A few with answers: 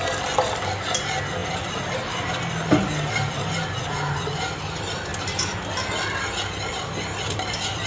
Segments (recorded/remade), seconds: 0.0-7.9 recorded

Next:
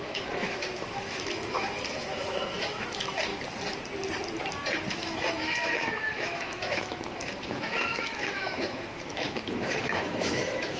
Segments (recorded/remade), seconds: 0.0-3.3 remade; 3.3-4.9 recorded; 4.9-10.8 remade

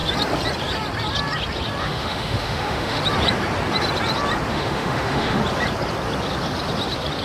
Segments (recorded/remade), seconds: 0.0-1.8 recorded; 1.8-3.0 remade; 3.0-4.5 recorded; 4.5-5.4 remade; 5.4-7.2 recorded

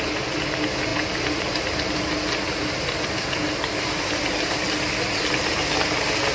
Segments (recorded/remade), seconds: 0.0-6.3 recorded